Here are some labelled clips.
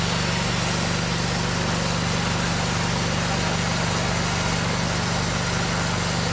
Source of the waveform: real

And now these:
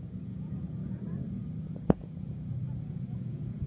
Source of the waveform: fake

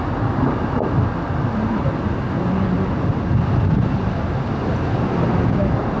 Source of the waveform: real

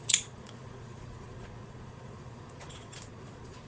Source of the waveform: fake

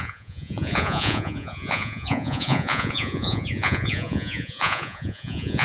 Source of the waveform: fake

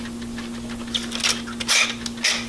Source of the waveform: real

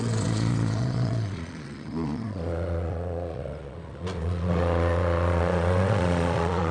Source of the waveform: fake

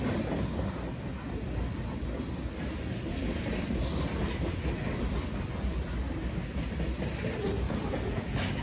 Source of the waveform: real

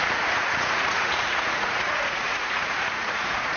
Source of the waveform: fake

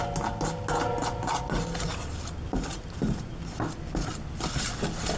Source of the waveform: real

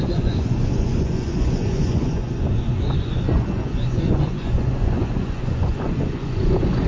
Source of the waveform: fake